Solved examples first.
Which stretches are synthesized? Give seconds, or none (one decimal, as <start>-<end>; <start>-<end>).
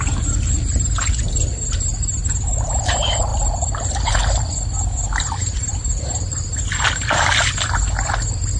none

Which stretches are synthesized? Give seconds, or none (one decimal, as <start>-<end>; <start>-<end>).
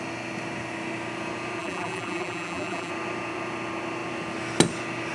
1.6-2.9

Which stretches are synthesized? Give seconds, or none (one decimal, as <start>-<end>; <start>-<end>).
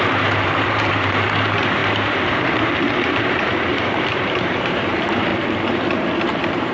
0.0-5.3; 6.2-6.7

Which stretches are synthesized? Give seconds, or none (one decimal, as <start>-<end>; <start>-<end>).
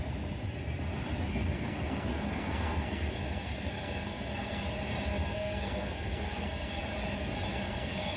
1.3-4.6; 5.1-6.8; 7.5-8.2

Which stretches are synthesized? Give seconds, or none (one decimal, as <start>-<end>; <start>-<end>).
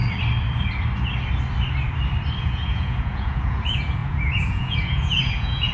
2.4-5.7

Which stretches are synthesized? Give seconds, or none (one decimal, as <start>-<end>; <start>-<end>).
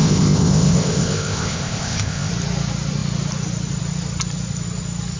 0.0-2.3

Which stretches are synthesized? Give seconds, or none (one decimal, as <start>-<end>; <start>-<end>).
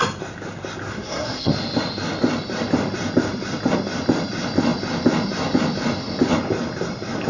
0.9-1.5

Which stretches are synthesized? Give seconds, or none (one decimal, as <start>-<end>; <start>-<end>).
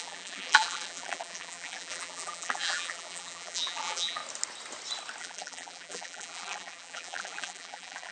0.0-4.2; 5.2-8.1